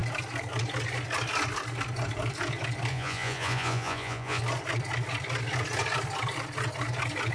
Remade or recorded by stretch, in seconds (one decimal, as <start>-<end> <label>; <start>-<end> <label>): 0.0-2.9 recorded; 2.9-4.4 remade; 4.4-7.3 recorded